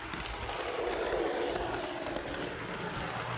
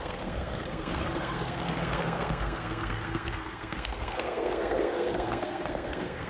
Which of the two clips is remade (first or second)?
second